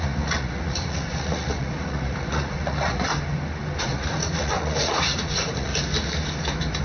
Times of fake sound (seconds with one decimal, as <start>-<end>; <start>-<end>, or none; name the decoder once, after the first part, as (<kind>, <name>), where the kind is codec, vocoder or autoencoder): 0.0-3.1 (vocoder, Vocos); 3.8-5.7